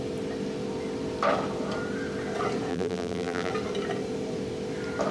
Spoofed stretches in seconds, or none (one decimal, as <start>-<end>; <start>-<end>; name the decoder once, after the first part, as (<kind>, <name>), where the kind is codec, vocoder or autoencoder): 2.7-3.5 (vocoder, BigVGAN v2)

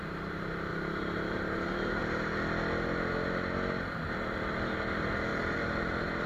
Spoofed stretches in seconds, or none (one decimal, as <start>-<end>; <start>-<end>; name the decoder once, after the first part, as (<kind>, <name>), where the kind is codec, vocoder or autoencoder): 0.7-2.0 (vocoder, BigVGAN v2); 5.3-6.3

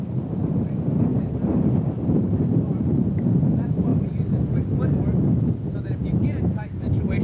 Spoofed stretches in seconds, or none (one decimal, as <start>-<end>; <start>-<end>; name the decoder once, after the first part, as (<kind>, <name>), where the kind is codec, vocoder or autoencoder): 1.1-3.3 (vocoder, BigVGAN v2)

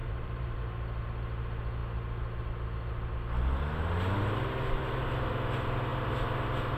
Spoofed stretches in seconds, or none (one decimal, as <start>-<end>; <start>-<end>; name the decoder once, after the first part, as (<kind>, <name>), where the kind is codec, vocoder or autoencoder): 0.0-0.6 (vocoder, BigVGAN v2)